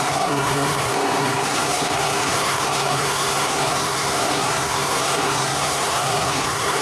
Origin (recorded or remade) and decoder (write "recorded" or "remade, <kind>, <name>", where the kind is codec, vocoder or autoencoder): remade, codec, SNAC